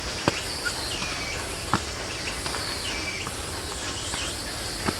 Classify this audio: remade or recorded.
recorded